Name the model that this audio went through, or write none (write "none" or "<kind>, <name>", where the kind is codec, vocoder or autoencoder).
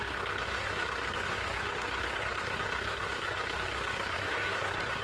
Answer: codec, SNAC